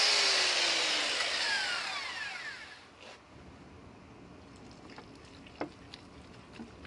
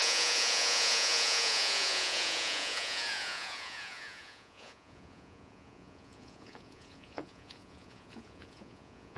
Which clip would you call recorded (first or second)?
first